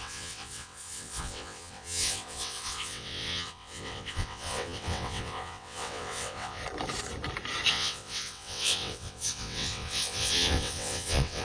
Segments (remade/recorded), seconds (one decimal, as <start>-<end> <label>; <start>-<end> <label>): 0.0-6.6 remade; 6.6-7.7 recorded; 7.7-11.4 remade